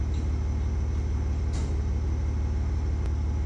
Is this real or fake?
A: real